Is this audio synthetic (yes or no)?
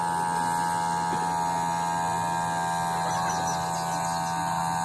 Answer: no